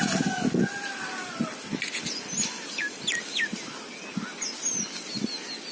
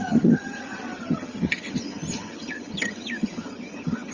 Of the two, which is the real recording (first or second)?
first